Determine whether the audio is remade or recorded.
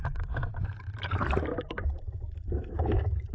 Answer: remade